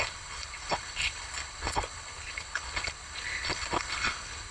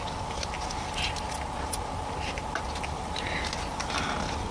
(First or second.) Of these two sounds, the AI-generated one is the first